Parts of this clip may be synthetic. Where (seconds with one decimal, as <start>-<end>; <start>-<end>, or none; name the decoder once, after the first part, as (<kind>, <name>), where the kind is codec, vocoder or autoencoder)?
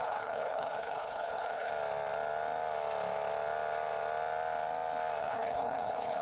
0.0-1.7 (codec, HILCodec); 5.2-6.2